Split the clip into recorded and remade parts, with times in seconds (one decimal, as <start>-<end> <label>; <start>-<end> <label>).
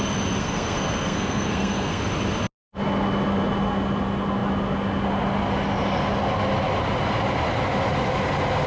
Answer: 0.0-0.4 recorded; 0.4-2.0 remade; 2.0-8.7 recorded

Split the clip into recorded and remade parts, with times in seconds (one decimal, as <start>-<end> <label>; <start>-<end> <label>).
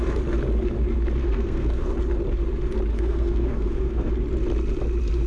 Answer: 0.0-1.2 recorded; 1.2-1.9 remade; 1.9-2.9 recorded; 2.9-4.1 remade; 4.1-5.3 recorded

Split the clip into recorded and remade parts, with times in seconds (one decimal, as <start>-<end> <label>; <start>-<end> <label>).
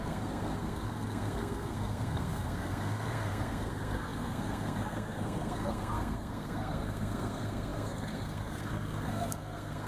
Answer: 0.0-9.9 remade